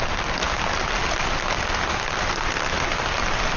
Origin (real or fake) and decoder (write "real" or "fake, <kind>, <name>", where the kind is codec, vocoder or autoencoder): real